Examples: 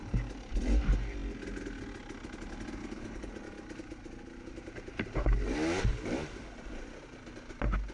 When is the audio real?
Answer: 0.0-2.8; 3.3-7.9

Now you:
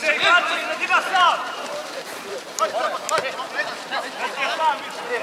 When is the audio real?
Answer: 3.1-5.2

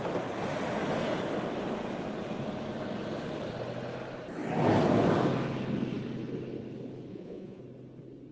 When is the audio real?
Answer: 0.0-7.1; 7.6-8.3

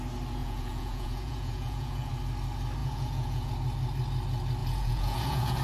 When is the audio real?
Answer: 0.0-0.4; 2.1-2.8; 3.5-4.6

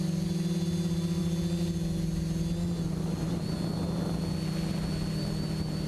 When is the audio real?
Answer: 0.0-5.9

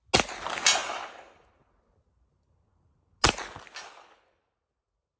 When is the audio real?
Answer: 0.0-5.2

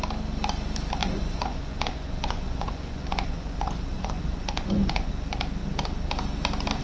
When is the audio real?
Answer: 0.0-1.0; 5.1-6.8